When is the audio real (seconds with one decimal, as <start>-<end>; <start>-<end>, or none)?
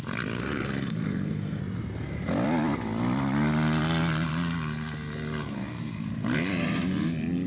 0.0-0.4; 1.6-7.5